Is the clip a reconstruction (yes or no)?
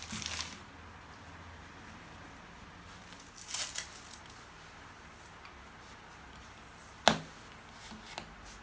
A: no